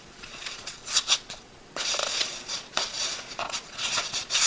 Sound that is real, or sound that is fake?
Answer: fake